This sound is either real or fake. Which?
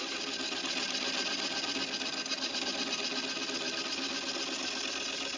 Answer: real